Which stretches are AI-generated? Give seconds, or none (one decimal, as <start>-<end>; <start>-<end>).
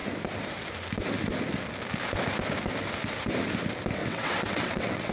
4.0-5.1